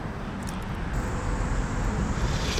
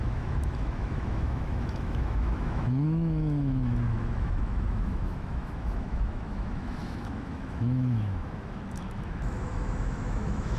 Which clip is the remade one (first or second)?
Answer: second